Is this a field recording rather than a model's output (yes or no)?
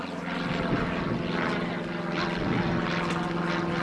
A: yes